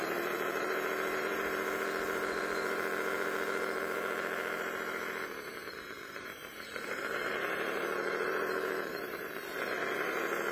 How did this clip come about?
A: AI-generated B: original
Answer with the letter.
A